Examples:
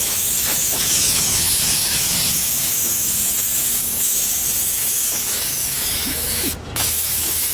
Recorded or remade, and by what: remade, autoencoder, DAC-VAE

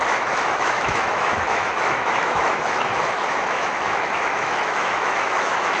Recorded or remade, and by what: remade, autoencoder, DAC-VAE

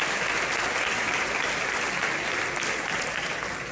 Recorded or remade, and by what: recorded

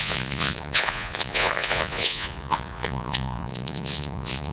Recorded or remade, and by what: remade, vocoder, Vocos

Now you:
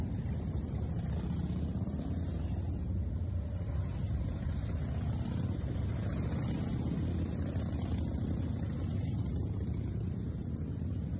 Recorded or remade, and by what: remade, vocoder, BigVGAN v2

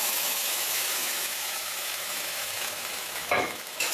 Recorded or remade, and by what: remade, autoencoder, DAC-VAE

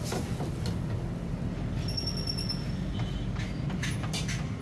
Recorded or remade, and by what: recorded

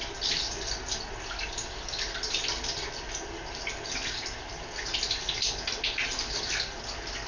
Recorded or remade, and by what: recorded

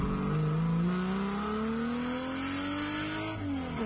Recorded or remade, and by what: recorded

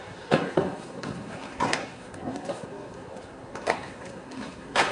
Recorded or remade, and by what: remade, codec, SNAC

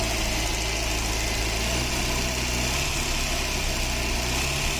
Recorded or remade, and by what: recorded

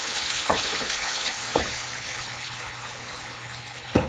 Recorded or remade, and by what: remade, codec, HILCodec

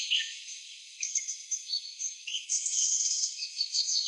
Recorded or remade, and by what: remade, codec, SNAC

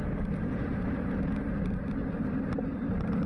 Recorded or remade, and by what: recorded